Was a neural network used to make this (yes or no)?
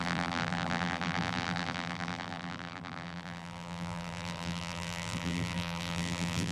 yes